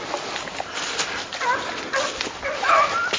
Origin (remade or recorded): recorded